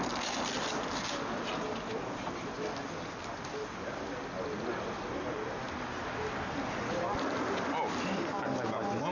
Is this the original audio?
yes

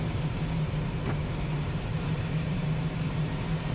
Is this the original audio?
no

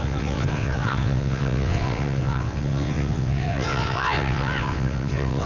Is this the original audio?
no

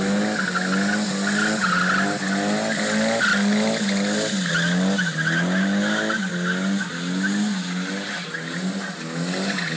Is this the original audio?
yes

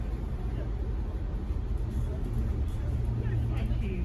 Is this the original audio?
yes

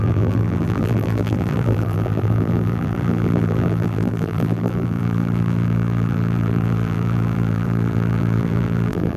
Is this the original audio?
no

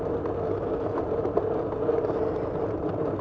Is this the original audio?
yes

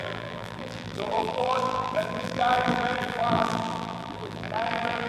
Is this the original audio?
no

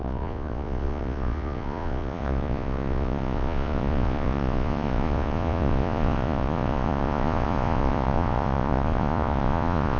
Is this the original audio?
no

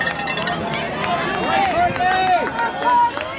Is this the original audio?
yes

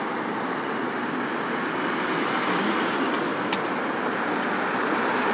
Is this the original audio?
yes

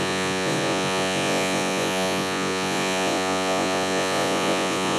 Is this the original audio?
no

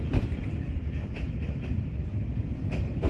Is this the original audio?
no